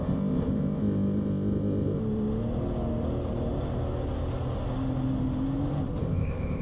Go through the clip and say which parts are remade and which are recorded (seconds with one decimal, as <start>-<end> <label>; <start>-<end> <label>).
0.0-2.0 remade; 2.0-6.0 recorded; 6.0-6.6 remade